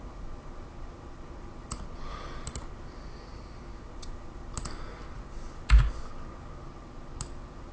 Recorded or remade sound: recorded